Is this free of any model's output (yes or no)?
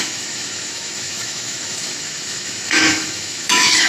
no